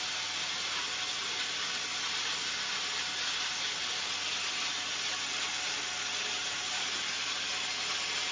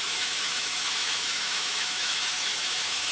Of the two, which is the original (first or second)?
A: first